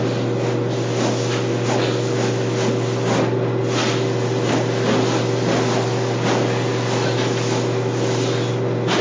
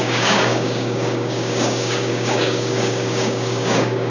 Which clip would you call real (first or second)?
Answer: first